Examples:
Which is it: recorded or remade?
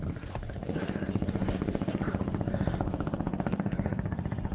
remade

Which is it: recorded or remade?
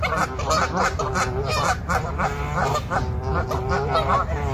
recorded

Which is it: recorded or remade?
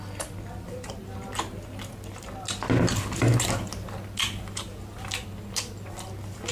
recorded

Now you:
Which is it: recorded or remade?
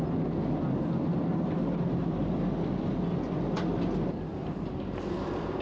recorded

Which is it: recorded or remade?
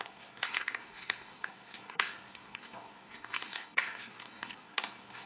remade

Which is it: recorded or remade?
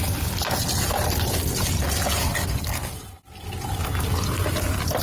recorded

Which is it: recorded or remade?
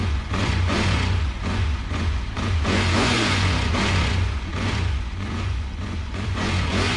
remade